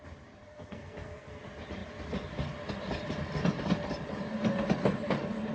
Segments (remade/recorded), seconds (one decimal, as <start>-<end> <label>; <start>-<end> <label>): 0.0-0.4 recorded; 0.4-1.4 remade; 1.4-5.5 recorded